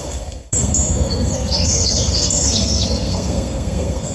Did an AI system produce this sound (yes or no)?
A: yes